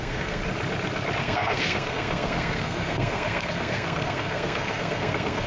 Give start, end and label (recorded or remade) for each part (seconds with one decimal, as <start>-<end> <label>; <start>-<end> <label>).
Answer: 0.0-0.4 remade; 0.4-1.2 recorded; 1.2-5.5 remade